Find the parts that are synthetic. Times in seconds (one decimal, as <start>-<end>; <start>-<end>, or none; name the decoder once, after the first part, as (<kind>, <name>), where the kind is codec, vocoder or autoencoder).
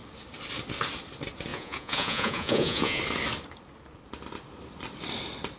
1.5-3.0 (vocoder, Vocos)